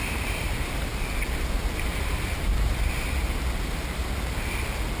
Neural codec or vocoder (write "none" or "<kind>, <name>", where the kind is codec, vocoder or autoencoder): none